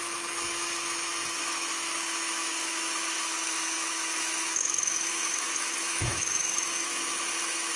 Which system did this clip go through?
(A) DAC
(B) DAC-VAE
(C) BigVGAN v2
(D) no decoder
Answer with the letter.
B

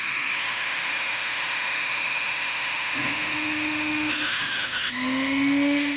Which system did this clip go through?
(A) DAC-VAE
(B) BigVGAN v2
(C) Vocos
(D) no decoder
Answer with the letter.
A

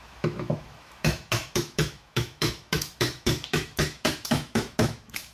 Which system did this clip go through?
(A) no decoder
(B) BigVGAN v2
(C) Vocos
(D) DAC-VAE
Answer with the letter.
D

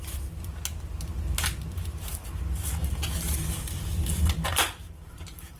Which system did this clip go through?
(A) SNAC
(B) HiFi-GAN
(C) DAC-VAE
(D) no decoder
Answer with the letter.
D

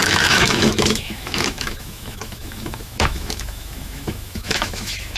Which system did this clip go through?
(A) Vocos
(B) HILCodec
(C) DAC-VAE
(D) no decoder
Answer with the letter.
C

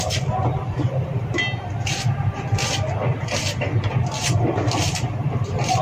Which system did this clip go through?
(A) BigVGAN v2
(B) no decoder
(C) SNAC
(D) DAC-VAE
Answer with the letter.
B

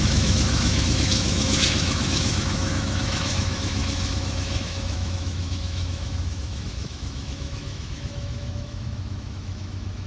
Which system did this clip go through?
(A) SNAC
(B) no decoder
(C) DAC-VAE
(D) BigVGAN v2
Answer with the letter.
C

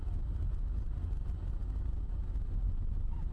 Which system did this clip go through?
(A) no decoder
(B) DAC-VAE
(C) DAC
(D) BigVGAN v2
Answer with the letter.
A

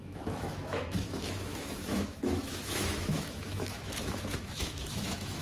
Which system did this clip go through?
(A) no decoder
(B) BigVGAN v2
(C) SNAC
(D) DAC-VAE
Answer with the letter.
D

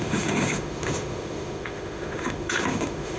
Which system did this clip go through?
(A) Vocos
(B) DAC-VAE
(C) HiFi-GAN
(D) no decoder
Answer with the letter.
B